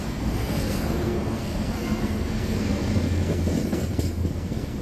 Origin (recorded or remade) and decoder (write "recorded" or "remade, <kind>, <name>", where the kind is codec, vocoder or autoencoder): remade, codec, SNAC